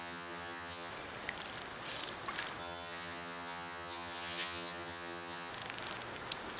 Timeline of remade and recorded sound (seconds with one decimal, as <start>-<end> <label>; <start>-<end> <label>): 0.0-0.9 remade; 0.9-2.6 recorded; 2.6-5.5 remade; 5.5-6.6 recorded